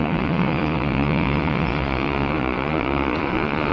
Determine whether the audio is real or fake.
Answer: fake